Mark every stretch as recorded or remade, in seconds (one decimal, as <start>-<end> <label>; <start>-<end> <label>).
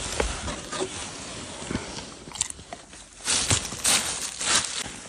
0.0-5.1 recorded